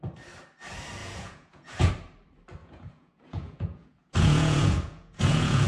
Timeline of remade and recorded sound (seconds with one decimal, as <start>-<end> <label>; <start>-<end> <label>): 0.0-1.0 recorded; 1.0-1.9 remade; 1.9-2.6 recorded; 2.6-5.7 remade